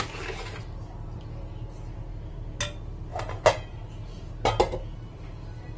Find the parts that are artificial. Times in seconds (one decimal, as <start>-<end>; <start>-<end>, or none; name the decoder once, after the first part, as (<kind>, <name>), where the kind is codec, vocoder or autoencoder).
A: 3.1-3.7 (vocoder, Vocos)